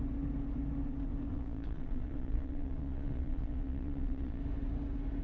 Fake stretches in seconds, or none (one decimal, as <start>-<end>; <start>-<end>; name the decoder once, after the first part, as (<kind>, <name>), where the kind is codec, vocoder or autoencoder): 1.3-4.4 (vocoder, Vocos)